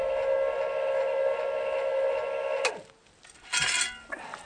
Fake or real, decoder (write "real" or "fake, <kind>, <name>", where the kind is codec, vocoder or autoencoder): real